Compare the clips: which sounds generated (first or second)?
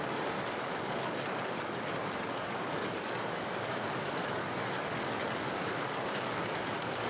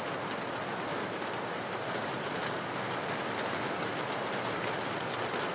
first